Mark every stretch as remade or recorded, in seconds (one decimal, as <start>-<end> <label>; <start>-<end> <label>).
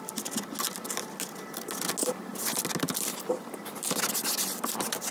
0.0-5.1 recorded